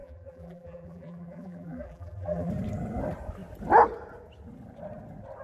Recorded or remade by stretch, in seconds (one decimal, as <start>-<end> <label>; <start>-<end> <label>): 0.0-2.5 remade; 2.5-5.4 recorded